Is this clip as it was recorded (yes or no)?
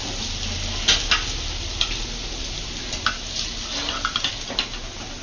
yes